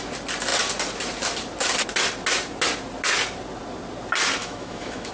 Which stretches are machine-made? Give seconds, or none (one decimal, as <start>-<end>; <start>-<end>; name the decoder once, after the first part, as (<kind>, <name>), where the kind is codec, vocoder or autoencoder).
4.4-5.1 (autoencoder, DAC-VAE)